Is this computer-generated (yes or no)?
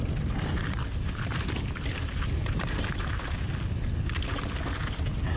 no